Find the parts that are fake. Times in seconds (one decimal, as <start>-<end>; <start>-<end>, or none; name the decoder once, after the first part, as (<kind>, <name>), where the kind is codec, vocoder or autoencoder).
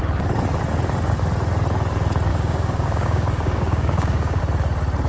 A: 2.3-4.4 (codec, DAC)